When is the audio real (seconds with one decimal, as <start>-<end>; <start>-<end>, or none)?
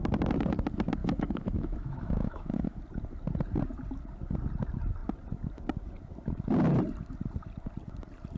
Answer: 0.0-1.0; 2.8-8.4